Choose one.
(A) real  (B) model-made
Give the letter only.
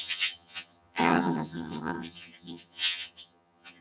B